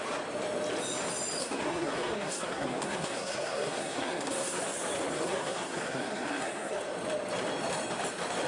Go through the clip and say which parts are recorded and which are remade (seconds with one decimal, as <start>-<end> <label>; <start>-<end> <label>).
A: 0.0-1.4 recorded; 1.4-4.6 remade; 4.6-5.1 recorded; 5.1-6.8 remade; 6.8-8.5 recorded